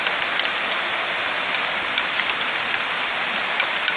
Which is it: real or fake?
real